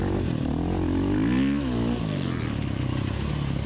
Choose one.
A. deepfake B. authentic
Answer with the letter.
B